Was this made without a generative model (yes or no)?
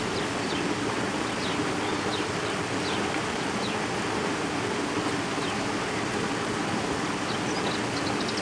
yes